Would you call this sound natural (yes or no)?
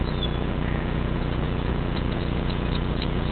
no